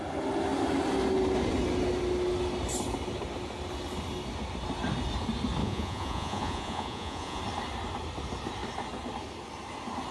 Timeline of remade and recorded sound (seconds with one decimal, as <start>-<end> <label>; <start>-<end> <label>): 0.0-5.6 recorded; 5.6-7.4 remade; 7.4-10.1 recorded